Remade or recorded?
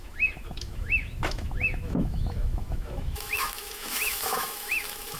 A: remade